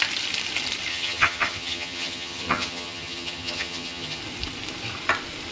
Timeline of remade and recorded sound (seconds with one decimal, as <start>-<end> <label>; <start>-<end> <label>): 0.0-0.9 recorded; 0.9-4.2 remade; 4.2-5.5 recorded